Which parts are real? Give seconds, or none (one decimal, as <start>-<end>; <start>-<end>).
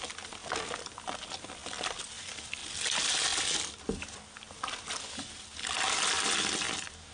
0.0-7.1